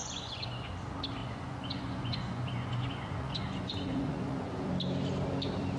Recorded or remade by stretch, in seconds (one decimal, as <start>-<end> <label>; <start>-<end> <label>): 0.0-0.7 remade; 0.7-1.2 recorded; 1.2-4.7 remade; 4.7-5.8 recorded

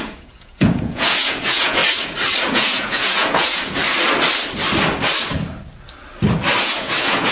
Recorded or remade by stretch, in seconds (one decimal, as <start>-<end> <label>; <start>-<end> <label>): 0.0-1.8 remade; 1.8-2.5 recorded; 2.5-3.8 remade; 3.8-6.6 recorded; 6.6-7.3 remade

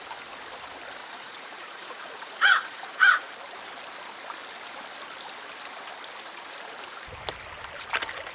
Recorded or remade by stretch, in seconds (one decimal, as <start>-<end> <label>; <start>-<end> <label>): 0.0-1.0 recorded; 1.0-3.3 remade; 3.3-8.3 recorded

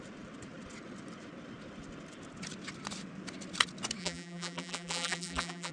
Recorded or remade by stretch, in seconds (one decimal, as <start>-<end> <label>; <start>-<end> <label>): 0.0-4.0 recorded; 4.0-5.7 remade

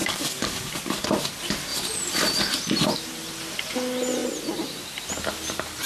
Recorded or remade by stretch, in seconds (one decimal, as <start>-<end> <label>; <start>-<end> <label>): 0.0-0.7 remade; 0.7-5.9 recorded